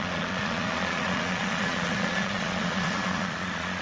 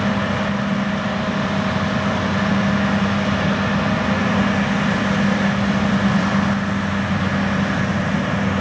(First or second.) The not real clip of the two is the first